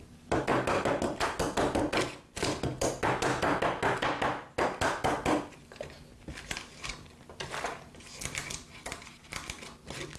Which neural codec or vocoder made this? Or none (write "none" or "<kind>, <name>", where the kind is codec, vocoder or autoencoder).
none